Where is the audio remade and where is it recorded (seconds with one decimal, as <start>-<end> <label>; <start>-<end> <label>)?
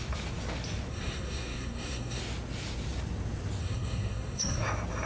0.0-0.9 recorded; 0.9-2.2 remade; 2.2-3.6 recorded; 3.6-4.6 remade; 4.6-5.1 recorded